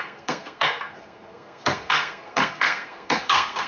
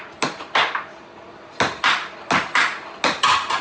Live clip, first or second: second